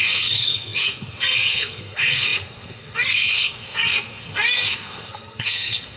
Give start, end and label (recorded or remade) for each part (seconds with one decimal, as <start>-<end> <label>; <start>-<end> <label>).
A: 0.0-6.0 remade